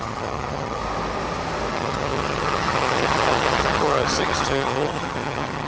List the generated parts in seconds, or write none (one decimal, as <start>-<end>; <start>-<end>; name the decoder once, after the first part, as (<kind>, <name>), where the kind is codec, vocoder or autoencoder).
0.0-0.8 (vocoder, HiFi-GAN); 1.7-5.7